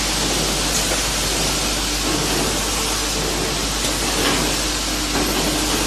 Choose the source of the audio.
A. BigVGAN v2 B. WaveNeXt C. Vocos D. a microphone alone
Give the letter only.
D